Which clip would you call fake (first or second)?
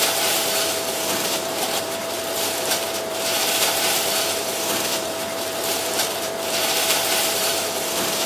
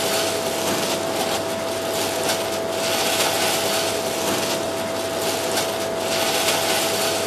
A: first